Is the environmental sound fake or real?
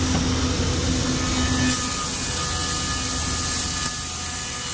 real